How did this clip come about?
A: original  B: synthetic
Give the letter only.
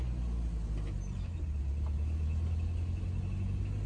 A